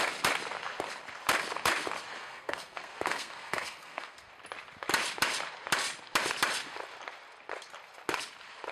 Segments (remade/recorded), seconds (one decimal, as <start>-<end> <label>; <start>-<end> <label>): 0.0-2.2 recorded; 2.2-4.3 remade; 4.3-8.7 recorded